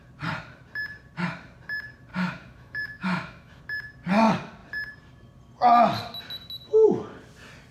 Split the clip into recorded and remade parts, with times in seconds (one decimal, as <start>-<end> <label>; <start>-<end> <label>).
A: 0.0-2.1 recorded; 2.1-3.6 remade; 3.6-7.7 recorded